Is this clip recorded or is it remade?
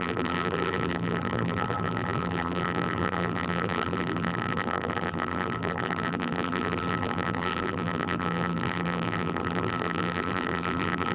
remade